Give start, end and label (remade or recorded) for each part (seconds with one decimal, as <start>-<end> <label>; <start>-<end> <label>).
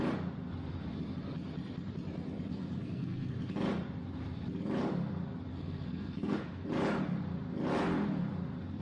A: 0.0-2.5 recorded; 2.5-3.3 remade; 3.3-5.5 recorded; 5.5-6.7 remade; 6.7-8.8 recorded